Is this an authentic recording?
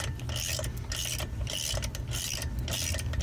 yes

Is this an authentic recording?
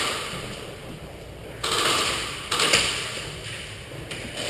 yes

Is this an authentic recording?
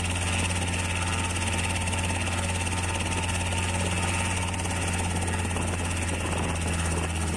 yes